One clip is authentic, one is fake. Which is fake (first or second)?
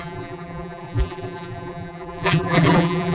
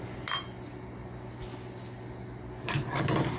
first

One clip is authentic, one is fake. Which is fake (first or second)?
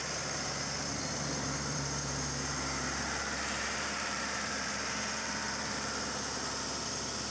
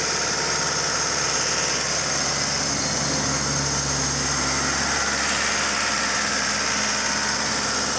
first